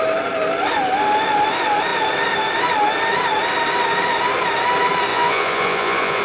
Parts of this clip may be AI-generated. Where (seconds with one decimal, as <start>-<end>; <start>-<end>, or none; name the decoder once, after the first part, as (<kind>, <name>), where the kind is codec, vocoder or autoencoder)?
5.1-6.2 (vocoder, Vocos)